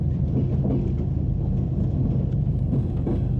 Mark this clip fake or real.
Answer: real